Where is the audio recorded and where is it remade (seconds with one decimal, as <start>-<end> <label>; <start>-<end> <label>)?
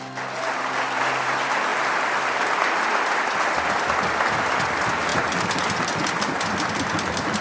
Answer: 0.0-7.4 recorded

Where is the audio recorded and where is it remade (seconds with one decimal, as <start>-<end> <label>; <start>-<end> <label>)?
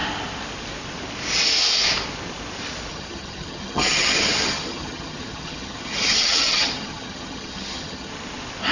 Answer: 0.0-2.9 recorded; 2.9-8.1 remade; 8.1-8.7 recorded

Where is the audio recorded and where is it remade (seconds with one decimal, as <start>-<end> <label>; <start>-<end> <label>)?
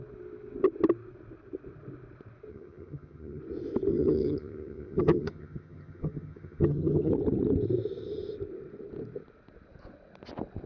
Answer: 0.0-2.5 recorded; 2.5-3.4 remade; 3.4-3.9 recorded; 3.9-7.1 remade; 7.1-10.7 recorded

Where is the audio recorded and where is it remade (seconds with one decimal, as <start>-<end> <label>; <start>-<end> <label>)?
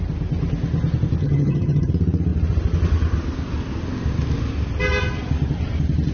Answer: 0.0-1.2 recorded; 1.2-1.9 remade; 1.9-6.1 recorded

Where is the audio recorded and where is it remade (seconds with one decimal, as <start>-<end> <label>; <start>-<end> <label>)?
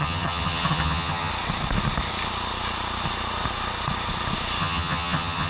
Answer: 0.0-1.3 remade; 1.3-4.6 recorded; 4.6-5.5 remade